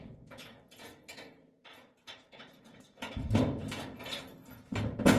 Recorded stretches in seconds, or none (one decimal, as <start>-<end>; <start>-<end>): 3.1-5.2